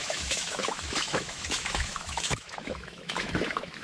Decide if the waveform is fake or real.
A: fake